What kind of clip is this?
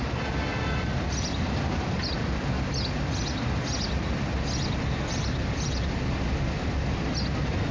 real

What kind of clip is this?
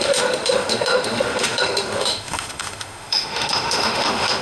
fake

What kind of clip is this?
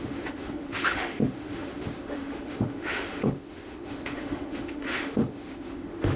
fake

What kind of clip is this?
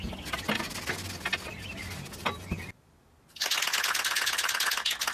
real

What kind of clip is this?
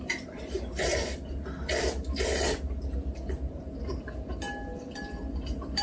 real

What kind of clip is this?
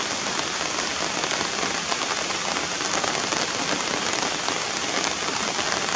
real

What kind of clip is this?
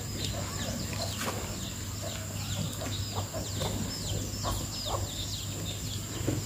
real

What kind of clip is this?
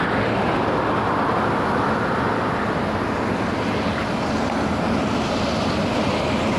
real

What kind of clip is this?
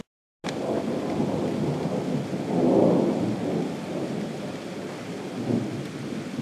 real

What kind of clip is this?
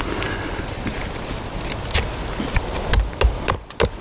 real